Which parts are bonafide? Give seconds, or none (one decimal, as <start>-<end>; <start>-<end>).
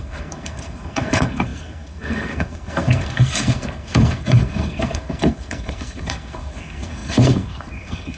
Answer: none